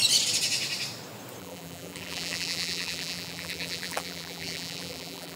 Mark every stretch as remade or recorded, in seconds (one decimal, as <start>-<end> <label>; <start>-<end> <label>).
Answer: 0.0-1.4 recorded; 1.4-5.4 remade